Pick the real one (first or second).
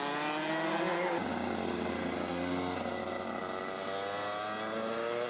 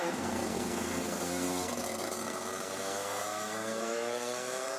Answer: first